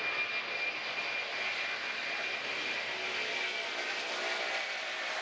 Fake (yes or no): no